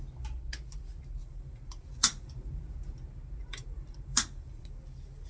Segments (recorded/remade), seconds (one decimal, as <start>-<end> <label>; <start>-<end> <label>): 0.0-1.2 recorded; 1.2-2.6 remade; 2.6-3.5 recorded; 3.5-4.6 remade; 4.6-5.3 recorded